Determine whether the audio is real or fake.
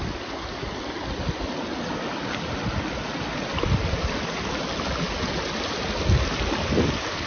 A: real